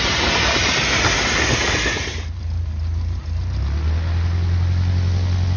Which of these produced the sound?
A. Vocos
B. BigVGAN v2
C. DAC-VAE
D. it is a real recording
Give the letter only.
D